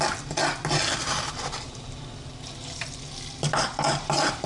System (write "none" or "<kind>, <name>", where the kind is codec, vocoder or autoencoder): none